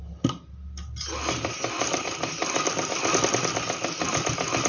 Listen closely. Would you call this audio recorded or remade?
recorded